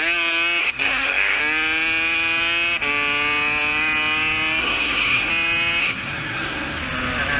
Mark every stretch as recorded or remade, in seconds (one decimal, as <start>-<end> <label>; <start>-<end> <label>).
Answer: 0.0-0.6 recorded; 0.6-1.4 remade; 1.4-4.6 recorded; 4.6-5.3 remade; 5.3-5.8 recorded; 5.8-6.8 remade; 6.8-7.4 recorded